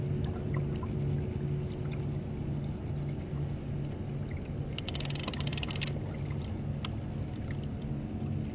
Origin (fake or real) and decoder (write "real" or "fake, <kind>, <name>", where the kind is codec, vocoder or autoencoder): real